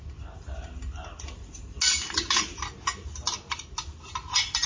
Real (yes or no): yes